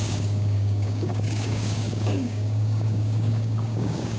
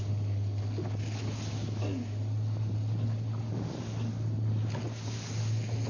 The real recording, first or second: second